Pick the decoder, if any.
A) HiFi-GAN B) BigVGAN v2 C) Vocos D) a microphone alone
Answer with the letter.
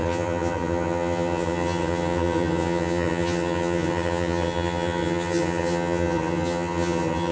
A